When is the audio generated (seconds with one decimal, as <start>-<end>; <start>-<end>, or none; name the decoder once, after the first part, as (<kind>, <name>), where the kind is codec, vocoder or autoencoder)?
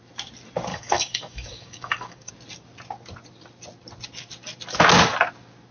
0.7-2.3 (codec, DAC)